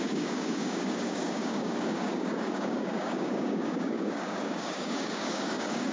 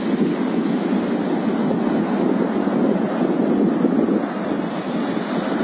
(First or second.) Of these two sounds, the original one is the second